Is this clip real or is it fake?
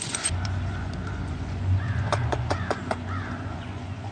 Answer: fake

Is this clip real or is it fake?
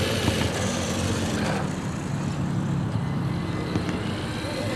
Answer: real